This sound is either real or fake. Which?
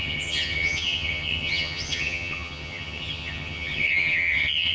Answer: fake